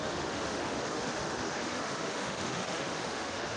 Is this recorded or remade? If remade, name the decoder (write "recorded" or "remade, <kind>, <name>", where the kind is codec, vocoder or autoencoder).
remade, autoencoder, DAC-VAE